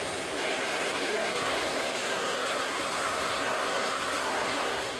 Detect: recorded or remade remade